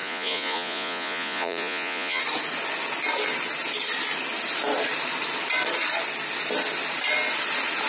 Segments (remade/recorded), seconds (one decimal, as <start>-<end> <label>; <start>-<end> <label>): 0.0-2.2 remade; 2.2-7.9 recorded